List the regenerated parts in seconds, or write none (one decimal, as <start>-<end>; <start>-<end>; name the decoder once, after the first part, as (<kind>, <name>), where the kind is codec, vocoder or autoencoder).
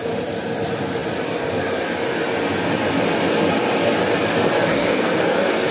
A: 4.7-5.7 (codec, SNAC)